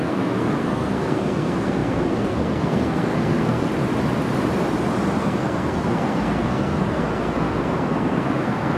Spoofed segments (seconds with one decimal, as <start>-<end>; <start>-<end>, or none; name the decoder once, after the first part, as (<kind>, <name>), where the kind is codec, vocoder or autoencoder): 0.0-3.7 (codec, SNAC); 5.2-8.8